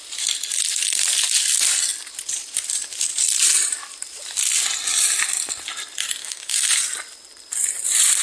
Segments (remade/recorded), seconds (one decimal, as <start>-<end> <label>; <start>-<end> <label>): 0.0-6.2 recorded; 6.2-6.8 remade; 6.8-8.2 recorded